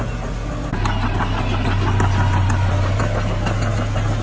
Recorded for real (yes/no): yes